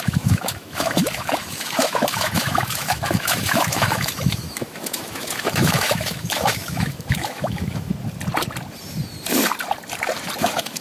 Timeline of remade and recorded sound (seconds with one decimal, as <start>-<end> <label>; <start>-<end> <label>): 0.0-7.9 remade; 7.9-10.4 recorded; 10.4-10.8 remade

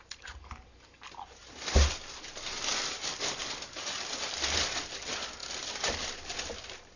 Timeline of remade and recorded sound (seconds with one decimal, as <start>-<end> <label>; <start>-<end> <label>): 0.0-7.0 recorded